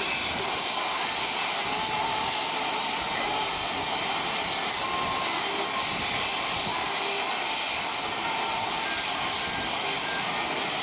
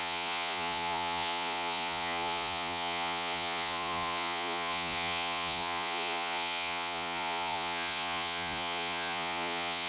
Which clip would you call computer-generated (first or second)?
second